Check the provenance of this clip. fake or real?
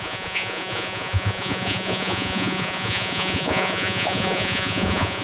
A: fake